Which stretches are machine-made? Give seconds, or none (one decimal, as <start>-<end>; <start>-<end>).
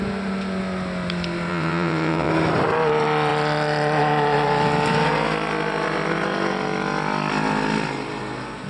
1.5-2.3